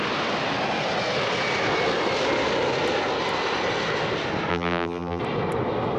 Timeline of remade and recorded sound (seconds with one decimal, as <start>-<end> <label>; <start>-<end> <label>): 0.0-4.5 recorded; 4.5-5.2 remade; 5.2-6.0 recorded